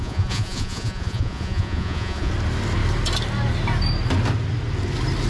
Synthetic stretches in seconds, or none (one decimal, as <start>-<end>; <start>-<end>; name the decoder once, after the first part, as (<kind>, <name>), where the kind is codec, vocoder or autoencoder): 0.0-2.3 (vocoder, Vocos)